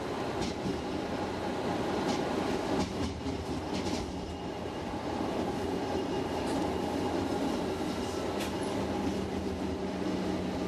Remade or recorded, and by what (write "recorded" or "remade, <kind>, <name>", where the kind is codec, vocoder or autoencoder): recorded